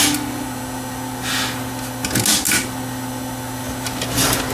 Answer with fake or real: real